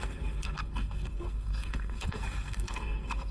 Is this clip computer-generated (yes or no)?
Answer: yes